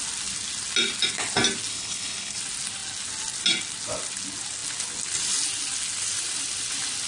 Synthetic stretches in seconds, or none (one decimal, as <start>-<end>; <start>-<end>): 1.7-2.4